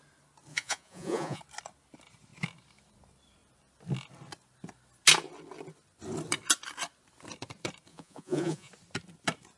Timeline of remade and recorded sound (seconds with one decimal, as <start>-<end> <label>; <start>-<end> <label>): 0.0-0.5 recorded; 0.5-1.4 remade; 1.4-7.9 recorded; 7.9-8.7 remade; 8.7-9.6 recorded